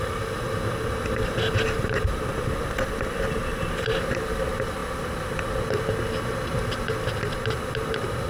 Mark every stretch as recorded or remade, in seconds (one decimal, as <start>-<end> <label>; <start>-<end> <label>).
0.0-8.3 recorded